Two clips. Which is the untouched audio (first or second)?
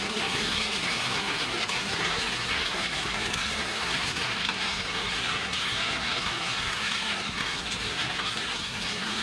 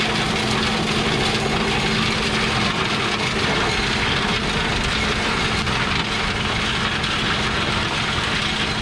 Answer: second